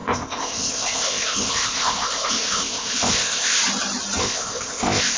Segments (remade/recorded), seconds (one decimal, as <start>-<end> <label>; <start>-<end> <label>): 0.0-3.6 remade; 3.6-4.2 recorded; 4.2-5.2 remade